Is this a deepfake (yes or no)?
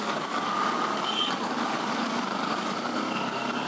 yes